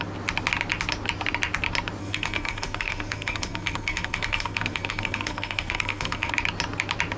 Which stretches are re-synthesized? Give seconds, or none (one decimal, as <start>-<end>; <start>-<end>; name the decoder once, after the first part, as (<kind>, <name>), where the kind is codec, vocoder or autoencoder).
2.0-6.3 (codec, SNAC)